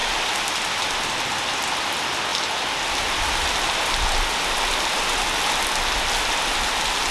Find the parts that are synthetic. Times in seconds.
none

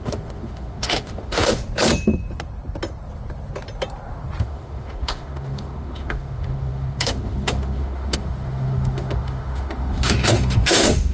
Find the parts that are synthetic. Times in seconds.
0.0-1.6; 4.4-11.1

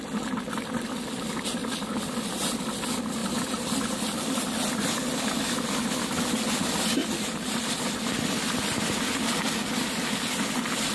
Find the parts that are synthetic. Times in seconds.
1.6-2.7; 3.2-5.2; 7.0-7.7

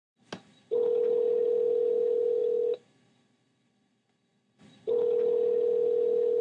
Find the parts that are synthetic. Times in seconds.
none

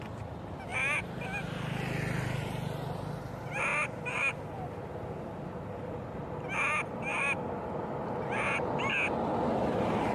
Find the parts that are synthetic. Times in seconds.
none

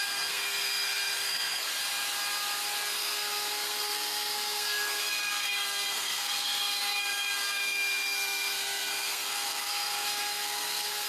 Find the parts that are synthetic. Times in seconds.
0.0-1.7; 3.0-11.1

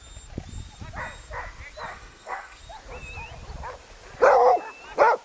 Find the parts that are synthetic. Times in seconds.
1.9-2.6

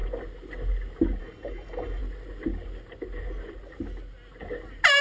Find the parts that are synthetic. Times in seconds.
1.2-2.0